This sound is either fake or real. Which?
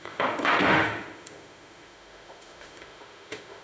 fake